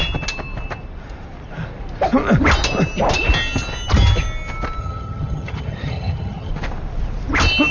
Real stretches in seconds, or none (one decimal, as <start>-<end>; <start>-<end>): 0.0-4.8; 6.5-7.7